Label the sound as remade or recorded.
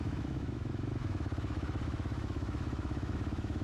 remade